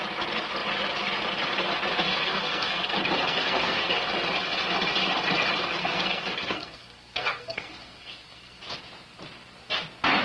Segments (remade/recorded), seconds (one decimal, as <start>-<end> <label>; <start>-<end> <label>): 0.0-2.1 recorded; 2.1-3.9 remade; 3.9-5.8 recorded; 5.8-8.6 remade; 8.6-10.2 recorded